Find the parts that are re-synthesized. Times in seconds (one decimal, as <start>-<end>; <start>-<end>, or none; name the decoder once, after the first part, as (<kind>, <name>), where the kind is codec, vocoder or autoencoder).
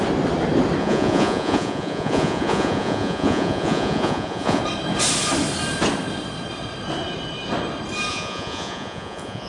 0.8-4.6 (vocoder, Vocos); 8.1-9.5